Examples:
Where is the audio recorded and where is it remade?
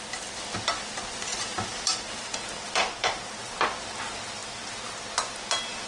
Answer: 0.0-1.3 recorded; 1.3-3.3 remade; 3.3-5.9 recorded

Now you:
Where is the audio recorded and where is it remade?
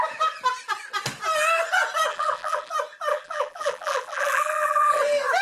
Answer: 0.0-2.1 recorded; 2.1-2.7 remade; 2.7-3.1 recorded; 3.1-5.0 remade; 5.0-5.4 recorded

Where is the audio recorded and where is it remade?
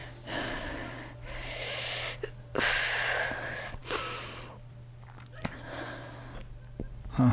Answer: 0.0-3.8 recorded; 3.8-4.5 remade; 4.5-7.3 recorded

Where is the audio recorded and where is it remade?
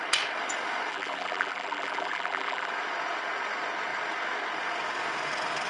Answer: 0.0-0.9 recorded; 0.9-2.7 remade; 2.7-5.7 recorded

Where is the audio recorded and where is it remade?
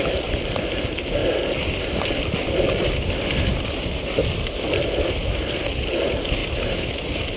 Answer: 0.0-1.2 remade; 1.2-5.3 recorded; 5.3-6.4 remade; 6.4-6.9 recorded; 6.9-7.4 remade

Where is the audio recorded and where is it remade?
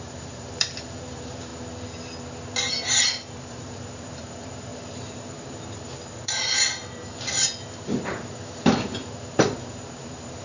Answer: 0.0-1.5 remade; 1.5-2.7 recorded; 2.7-10.4 remade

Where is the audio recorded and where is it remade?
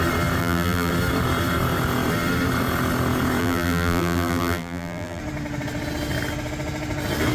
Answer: 0.0-0.4 recorded; 0.4-0.9 remade; 0.9-3.4 recorded; 3.4-5.2 remade; 5.2-7.3 recorded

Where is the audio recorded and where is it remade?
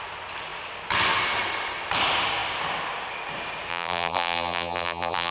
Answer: 0.0-3.7 recorded; 3.7-5.3 remade